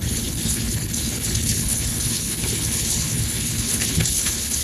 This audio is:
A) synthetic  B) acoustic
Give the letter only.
A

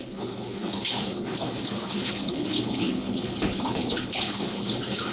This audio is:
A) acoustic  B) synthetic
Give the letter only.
B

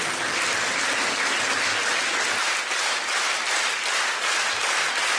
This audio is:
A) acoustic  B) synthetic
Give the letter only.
A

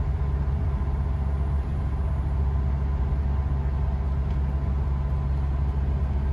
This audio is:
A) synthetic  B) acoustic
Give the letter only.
B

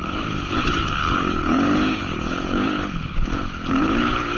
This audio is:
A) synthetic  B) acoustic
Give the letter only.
A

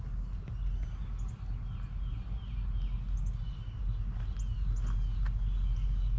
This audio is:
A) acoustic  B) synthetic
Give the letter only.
A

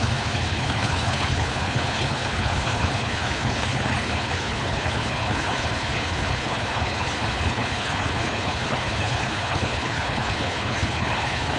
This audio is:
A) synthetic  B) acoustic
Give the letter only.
A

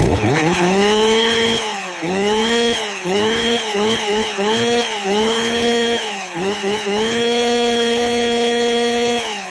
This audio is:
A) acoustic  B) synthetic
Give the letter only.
B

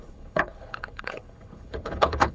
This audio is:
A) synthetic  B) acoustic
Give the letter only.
A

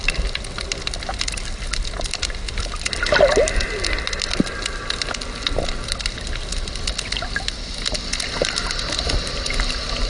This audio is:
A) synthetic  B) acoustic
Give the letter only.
B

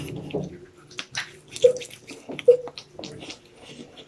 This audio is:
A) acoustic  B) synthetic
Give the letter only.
A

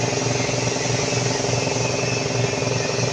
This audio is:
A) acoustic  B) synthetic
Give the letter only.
A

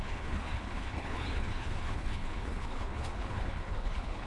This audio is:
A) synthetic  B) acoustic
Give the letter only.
A